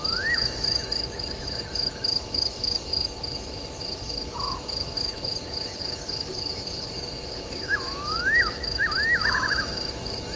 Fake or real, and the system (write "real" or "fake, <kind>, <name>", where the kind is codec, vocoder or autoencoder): fake, autoencoder, DAC-VAE